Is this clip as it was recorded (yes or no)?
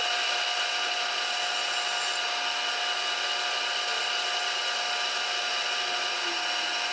yes